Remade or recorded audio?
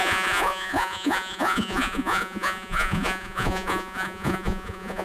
remade